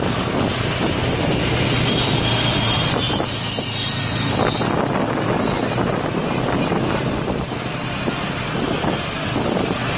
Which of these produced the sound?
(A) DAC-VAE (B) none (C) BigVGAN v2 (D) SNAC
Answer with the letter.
B